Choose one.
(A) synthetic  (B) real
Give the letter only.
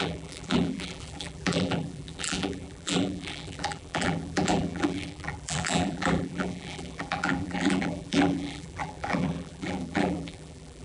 A